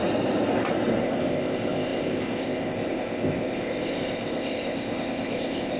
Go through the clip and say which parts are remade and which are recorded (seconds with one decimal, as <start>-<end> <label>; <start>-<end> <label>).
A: 0.0-1.0 recorded; 1.0-5.8 remade